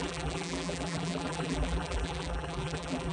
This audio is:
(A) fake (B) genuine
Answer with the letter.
A